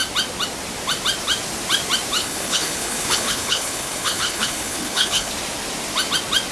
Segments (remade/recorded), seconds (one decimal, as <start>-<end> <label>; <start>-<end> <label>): 0.0-2.2 recorded; 2.2-5.3 remade; 5.3-6.5 recorded